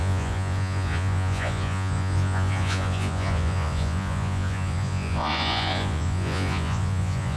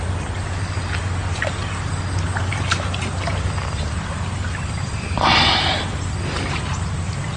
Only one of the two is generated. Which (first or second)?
first